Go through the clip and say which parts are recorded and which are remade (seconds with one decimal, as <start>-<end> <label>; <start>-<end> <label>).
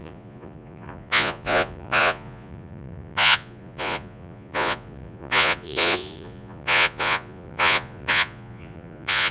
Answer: 0.0-9.3 remade